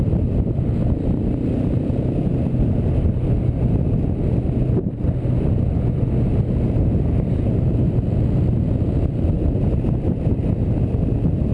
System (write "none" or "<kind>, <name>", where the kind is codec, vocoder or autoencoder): none